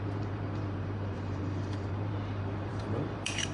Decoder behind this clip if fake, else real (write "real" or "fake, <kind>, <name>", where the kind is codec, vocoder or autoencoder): fake, vocoder, BigVGAN v2